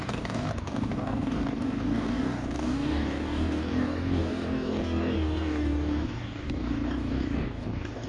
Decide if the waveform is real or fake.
fake